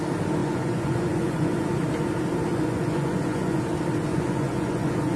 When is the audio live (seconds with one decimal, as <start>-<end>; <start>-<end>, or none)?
0.0-0.4; 1.7-2.5; 3.6-4.1